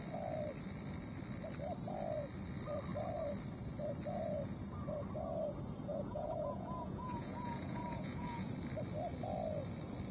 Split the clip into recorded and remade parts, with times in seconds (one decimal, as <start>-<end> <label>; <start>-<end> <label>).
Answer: 0.0-5.9 recorded; 5.9-8.5 remade; 8.5-10.1 recorded